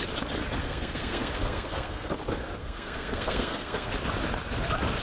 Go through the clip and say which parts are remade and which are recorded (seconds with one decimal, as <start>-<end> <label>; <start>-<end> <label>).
0.0-0.6 recorded; 0.6-2.1 remade; 2.1-2.6 recorded; 2.6-3.9 remade; 3.9-5.0 recorded